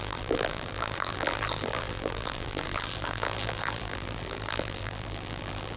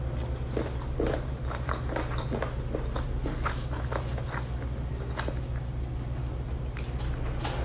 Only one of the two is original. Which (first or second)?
second